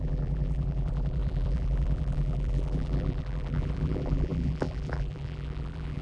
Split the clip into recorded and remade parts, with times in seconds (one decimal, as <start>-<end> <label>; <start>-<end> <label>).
0.0-6.0 remade